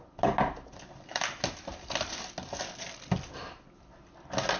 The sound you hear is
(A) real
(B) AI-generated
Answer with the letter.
A